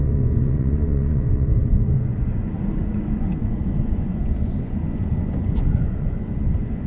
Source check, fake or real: fake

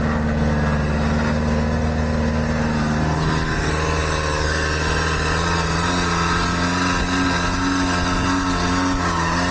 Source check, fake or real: real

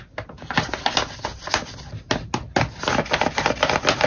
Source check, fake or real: real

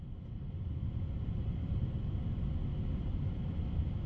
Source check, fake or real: real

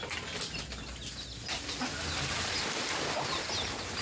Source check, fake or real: real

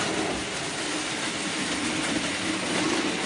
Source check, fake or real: real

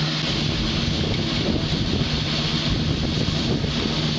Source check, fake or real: real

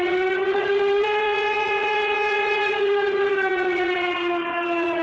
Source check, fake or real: fake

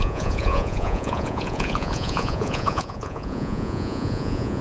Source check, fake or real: fake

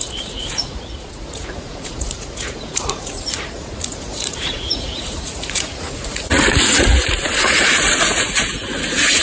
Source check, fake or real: fake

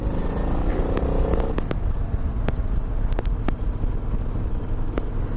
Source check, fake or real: real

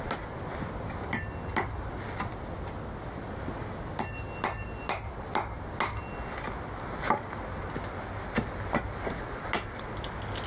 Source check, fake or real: real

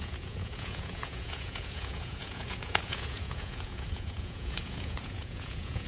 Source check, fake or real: fake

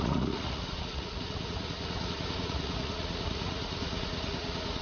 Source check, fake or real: fake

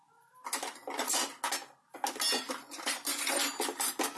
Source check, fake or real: real